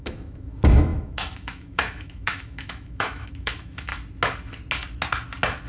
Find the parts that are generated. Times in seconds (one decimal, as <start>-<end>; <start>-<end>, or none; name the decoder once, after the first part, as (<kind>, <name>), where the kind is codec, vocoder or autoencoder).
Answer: 0.0-3.9 (autoencoder, DAC-VAE)